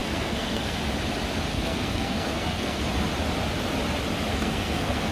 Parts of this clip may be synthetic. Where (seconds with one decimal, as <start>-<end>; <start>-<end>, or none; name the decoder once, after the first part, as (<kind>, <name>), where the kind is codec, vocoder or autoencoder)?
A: 0.0-0.8 (codec, SNAC); 1.5-2.8; 4.3-5.1